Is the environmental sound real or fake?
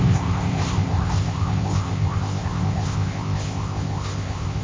fake